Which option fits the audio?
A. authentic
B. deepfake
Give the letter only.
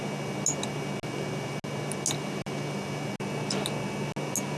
A